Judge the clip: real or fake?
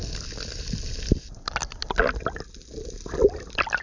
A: real